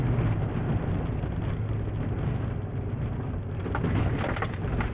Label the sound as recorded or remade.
recorded